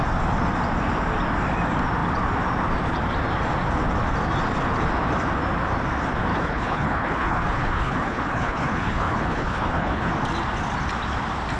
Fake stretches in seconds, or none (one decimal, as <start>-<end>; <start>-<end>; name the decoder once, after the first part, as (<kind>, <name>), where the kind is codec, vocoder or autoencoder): 6.3-10.1 (codec, HILCodec)